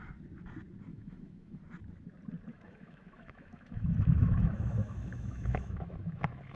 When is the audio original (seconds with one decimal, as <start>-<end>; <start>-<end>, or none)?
0.0-0.9; 1.6-2.5